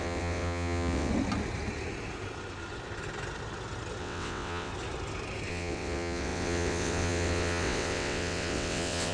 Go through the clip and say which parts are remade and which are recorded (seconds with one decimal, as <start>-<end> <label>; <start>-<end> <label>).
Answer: 0.0-1.1 remade; 1.1-4.0 recorded; 4.0-4.7 remade; 4.7-5.5 recorded; 5.5-9.1 remade